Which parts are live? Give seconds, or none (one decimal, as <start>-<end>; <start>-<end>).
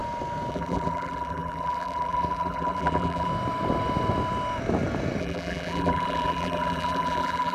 0.0-0.5; 3.3-5.2